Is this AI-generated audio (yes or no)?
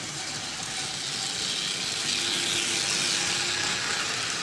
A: no